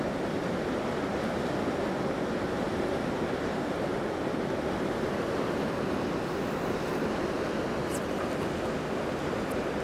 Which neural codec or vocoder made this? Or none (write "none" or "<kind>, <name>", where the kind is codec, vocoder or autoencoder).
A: none